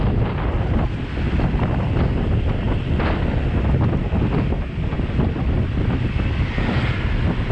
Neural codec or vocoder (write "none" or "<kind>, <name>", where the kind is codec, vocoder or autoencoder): none